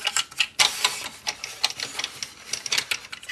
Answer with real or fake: real